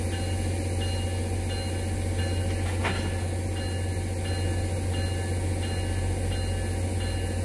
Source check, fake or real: real